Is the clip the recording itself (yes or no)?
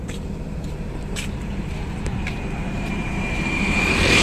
no